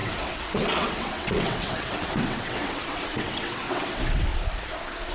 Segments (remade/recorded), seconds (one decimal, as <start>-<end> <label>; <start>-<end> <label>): 0.0-4.3 remade; 4.3-5.1 recorded